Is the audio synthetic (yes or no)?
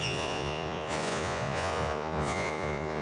yes